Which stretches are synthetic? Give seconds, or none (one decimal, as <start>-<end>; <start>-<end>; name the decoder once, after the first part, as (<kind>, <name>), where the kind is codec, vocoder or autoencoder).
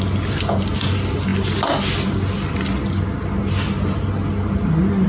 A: none